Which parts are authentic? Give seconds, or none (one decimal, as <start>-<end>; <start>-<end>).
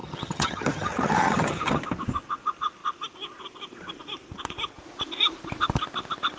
1.8-6.4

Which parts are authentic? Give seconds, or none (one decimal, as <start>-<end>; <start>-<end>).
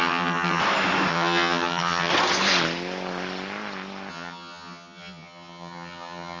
0.6-1.1; 2.1-4.1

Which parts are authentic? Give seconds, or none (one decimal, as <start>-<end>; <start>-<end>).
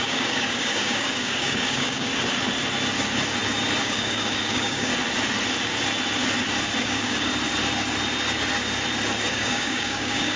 2.1-3.8; 4.9-6.8; 7.3-9.3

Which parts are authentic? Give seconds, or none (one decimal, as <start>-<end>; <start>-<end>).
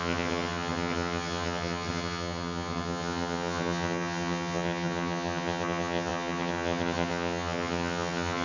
none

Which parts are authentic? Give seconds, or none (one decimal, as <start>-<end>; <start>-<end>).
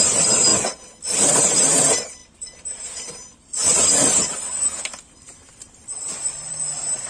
0.5-1.4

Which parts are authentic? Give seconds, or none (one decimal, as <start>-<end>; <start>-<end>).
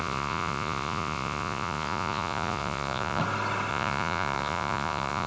3.2-3.7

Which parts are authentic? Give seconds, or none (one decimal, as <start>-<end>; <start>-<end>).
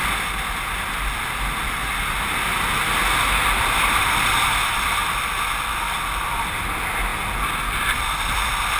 0.0-3.6; 5.0-6.1; 7.1-8.0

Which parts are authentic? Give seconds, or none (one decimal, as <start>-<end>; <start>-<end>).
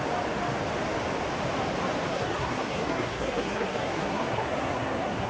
0.0-2.1